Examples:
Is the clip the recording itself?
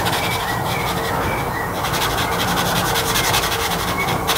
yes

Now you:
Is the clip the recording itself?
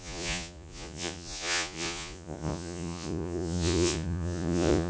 no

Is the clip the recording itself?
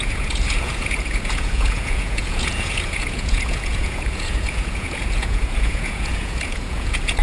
no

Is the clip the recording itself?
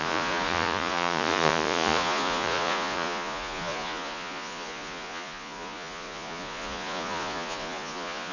no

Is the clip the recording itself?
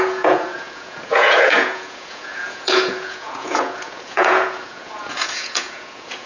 no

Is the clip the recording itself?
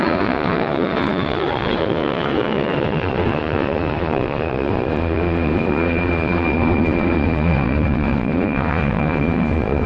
no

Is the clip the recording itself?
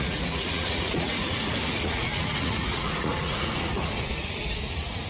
no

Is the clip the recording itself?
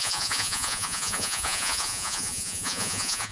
no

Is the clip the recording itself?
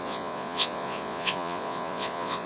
no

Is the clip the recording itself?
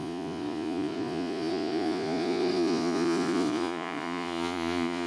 no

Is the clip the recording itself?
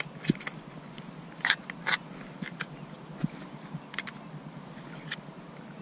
yes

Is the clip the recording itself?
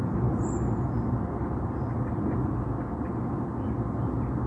yes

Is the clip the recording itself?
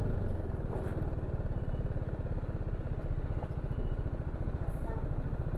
yes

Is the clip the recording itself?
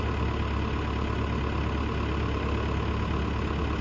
yes